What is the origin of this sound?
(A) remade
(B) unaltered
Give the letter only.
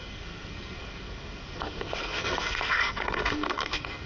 A